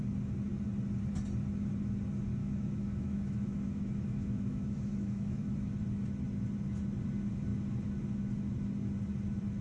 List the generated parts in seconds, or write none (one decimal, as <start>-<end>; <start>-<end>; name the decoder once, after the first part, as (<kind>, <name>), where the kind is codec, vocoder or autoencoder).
2.4-5.8 (autoencoder, DAC-VAE)

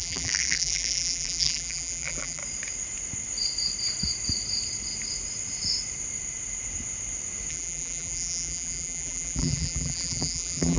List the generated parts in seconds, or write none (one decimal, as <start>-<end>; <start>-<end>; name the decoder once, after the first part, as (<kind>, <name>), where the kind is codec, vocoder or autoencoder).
0.0-2.4 (vocoder, BigVGAN v2); 7.5-10.8

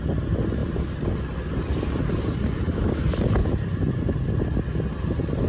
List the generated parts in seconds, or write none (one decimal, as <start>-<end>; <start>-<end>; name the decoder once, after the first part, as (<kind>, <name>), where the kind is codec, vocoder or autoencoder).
0.6-2.1 (vocoder, BigVGAN v2)

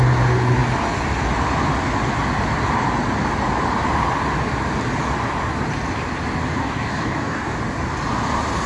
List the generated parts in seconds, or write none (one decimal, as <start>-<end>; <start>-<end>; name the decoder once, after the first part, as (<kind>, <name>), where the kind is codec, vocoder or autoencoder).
6.6-7.6 (codec, DAC)

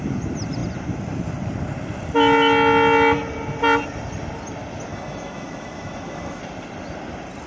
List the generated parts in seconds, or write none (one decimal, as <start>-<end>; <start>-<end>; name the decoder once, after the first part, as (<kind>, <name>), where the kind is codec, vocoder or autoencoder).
4.9-6.4 (autoencoder, DAC-VAE)

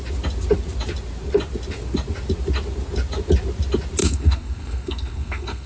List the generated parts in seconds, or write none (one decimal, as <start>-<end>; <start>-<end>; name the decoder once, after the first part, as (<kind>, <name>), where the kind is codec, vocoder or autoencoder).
4.0-5.7 (codec, SNAC)